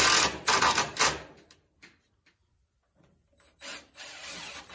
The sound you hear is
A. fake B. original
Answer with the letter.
B